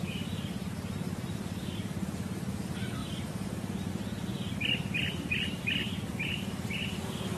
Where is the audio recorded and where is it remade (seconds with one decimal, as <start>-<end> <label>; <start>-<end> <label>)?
0.0-7.4 recorded